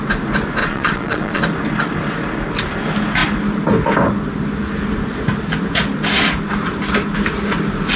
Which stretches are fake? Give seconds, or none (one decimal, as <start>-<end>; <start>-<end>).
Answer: 0.6-1.4